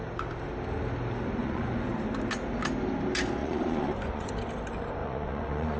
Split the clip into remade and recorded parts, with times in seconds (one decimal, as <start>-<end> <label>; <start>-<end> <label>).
0.0-1.4 recorded; 1.4-1.9 remade; 1.9-3.4 recorded; 3.4-4.3 remade; 4.3-5.0 recorded; 5.0-5.8 remade